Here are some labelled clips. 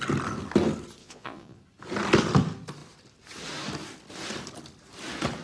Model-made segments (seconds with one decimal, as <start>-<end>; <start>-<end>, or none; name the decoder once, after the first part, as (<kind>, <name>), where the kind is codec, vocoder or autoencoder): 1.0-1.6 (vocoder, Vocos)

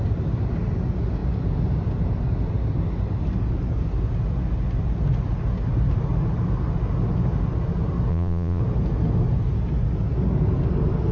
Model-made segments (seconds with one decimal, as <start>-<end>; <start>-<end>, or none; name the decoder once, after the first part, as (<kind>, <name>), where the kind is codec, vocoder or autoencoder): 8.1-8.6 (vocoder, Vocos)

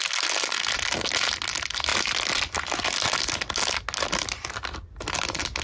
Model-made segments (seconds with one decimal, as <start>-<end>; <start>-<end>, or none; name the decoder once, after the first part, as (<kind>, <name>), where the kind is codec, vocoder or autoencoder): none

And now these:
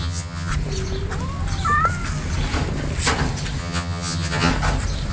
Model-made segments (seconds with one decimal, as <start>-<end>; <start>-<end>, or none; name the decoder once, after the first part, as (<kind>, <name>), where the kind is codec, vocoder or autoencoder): 0.0-0.5 (vocoder, HiFi-GAN); 3.6-4.5

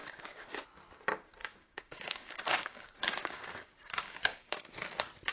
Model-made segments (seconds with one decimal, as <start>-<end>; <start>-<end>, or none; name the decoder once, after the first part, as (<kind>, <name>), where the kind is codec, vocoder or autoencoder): 0.0-0.6 (codec, DAC); 1.4-4.6